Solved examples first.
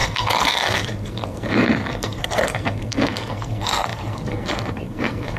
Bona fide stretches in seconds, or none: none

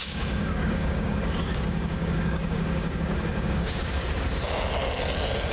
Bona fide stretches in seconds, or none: 4.0-5.5

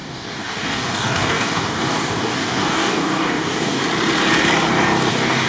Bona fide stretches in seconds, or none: 3.8-5.1

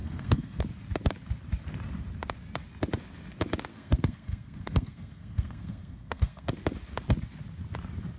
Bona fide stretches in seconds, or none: 0.6-3.7; 6.5-8.2

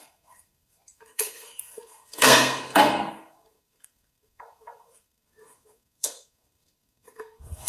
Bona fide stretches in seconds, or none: none